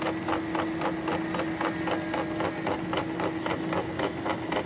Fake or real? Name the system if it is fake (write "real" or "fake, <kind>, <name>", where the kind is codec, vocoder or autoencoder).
real